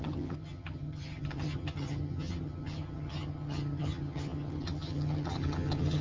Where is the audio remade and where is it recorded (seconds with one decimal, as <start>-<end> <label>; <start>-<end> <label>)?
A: 0.0-6.0 remade